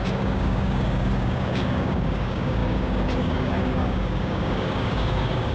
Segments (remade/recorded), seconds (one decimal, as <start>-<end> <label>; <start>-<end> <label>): 0.0-5.5 remade